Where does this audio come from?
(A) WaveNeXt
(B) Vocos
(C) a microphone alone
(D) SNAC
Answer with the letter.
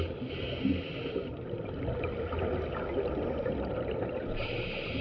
C